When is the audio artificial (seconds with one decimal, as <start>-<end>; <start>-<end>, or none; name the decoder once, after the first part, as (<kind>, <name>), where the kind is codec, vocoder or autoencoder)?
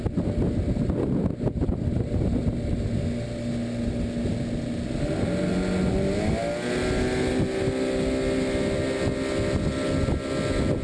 none